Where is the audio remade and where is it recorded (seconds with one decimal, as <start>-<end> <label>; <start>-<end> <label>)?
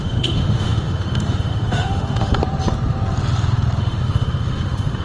0.0-2.4 remade; 2.4-3.8 recorded; 3.8-5.0 remade